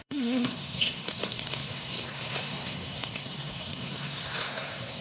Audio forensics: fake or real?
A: fake